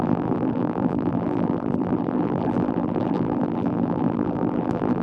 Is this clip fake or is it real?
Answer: fake